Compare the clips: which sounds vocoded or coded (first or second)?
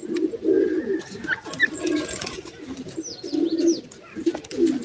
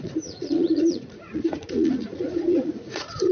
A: second